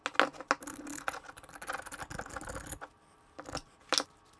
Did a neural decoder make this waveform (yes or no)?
no